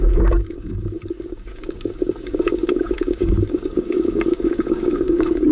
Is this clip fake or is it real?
fake